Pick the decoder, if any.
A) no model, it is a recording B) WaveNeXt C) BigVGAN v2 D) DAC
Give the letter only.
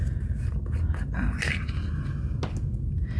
A